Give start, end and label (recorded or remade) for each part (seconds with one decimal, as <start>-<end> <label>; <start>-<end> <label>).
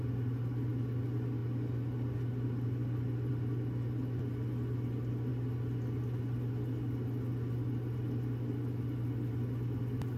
0.0-10.2 recorded